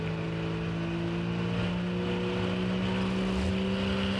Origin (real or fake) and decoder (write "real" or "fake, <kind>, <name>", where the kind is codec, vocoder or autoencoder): real